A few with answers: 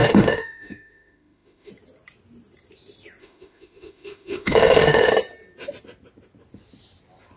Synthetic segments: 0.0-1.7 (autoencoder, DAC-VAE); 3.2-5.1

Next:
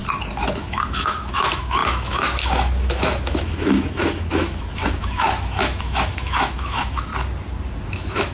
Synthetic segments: 0.6-7.1 (autoencoder, DAC-VAE); 7.9-8.3

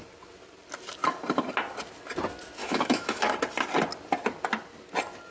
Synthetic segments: 2.6-3.3 (autoencoder, DAC-VAE)

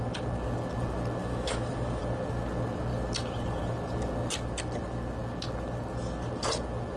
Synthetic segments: 1.2-2.0 (autoencoder, DAC-VAE)